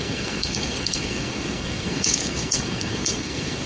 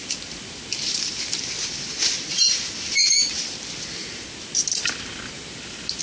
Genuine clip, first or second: second